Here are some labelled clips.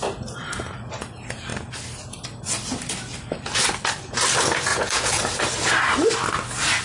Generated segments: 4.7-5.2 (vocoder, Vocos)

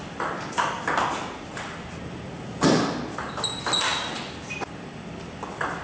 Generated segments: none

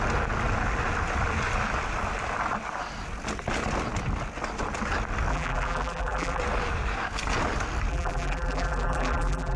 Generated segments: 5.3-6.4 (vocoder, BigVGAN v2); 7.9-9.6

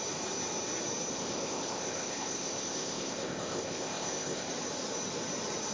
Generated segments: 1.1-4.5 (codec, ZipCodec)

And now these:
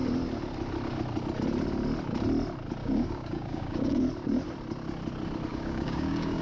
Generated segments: 2.8-4.0 (codec, DAC); 5.5-6.4